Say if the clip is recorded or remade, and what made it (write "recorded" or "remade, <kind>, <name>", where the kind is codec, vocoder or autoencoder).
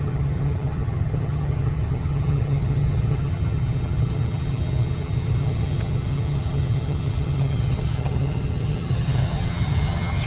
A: remade, vocoder, HiFi-GAN